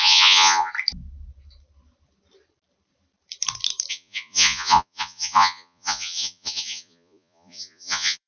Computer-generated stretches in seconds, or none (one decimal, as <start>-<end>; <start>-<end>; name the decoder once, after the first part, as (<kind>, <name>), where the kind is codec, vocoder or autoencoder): 0.0-0.7 (vocoder, Vocos); 3.9-8.3